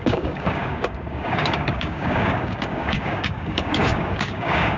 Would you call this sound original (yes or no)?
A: no